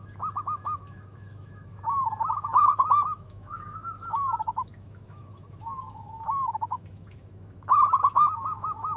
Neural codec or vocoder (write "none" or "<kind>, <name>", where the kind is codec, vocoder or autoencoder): autoencoder, DAC-VAE